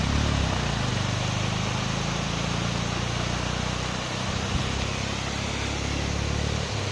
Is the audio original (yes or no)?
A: yes